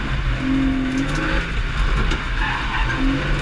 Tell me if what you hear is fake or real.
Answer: real